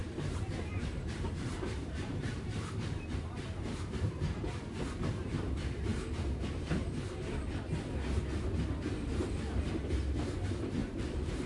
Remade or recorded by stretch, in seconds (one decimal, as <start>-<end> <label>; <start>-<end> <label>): 0.0-4.6 remade; 4.6-10.8 recorded; 10.8-11.5 remade